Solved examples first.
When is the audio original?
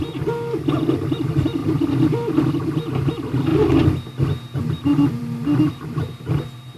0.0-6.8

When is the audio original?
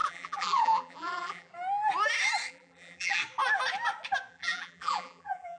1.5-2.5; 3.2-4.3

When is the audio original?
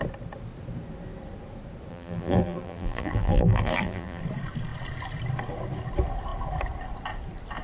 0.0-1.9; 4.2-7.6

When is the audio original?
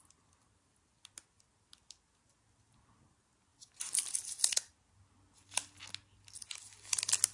0.0-7.3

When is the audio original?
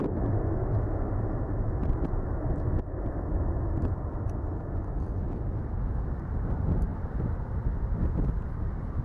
0.0-6.9; 7.4-9.0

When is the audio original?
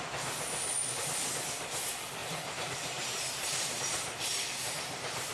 0.0-2.2